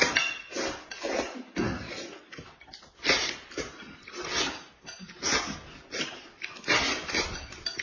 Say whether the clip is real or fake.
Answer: real